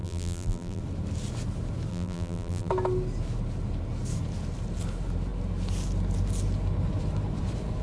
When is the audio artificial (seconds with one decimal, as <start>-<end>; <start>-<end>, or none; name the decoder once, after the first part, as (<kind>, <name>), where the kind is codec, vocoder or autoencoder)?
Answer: 0.0-0.8 (vocoder, BigVGAN v2); 1.9-2.7